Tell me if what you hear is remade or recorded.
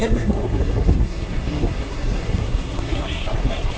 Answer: remade